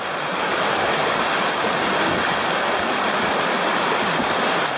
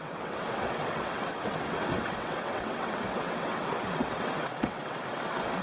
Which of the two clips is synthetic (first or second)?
second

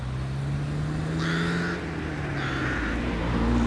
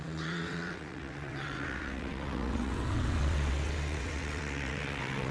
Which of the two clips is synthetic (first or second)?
second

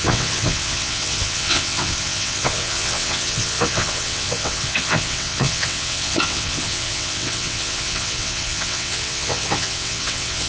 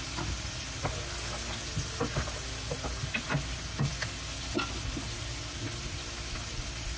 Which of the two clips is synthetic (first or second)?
first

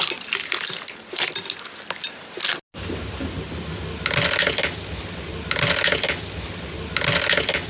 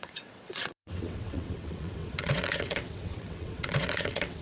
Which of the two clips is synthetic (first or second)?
second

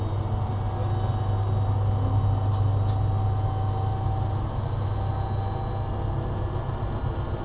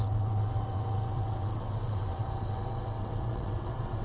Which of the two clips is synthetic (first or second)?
second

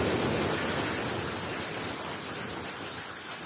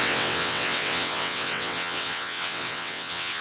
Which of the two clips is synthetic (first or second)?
second